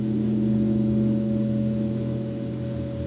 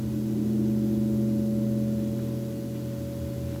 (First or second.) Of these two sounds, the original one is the second